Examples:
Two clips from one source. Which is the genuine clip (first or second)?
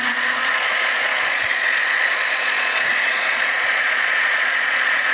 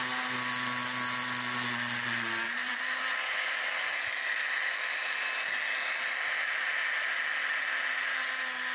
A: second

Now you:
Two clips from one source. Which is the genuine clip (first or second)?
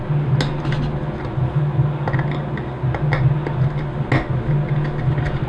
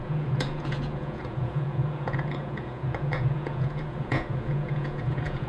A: first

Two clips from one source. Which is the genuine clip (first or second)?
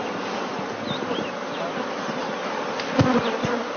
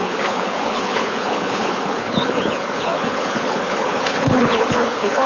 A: first